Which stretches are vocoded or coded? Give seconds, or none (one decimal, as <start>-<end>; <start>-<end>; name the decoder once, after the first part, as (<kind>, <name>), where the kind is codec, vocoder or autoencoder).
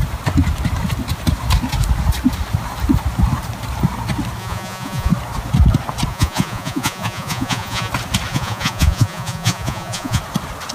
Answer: 4.4-5.1 (vocoder, Vocos); 6.1-7.9; 8.3-10.2